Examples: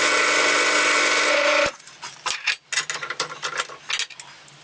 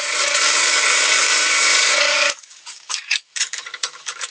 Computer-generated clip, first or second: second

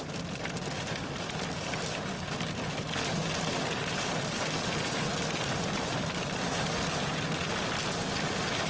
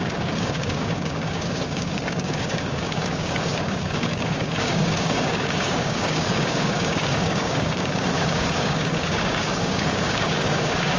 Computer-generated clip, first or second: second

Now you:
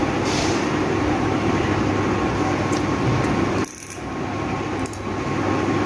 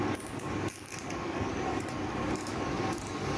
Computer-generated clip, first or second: second